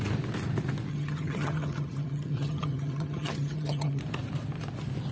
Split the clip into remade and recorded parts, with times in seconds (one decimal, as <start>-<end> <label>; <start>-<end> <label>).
0.0-0.9 recorded; 0.9-4.0 remade; 4.0-5.1 recorded